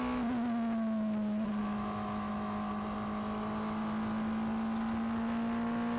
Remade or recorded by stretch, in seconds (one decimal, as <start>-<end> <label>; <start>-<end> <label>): 0.0-1.6 recorded; 1.6-2.7 remade; 2.7-6.0 recorded